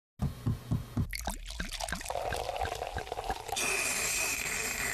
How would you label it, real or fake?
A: real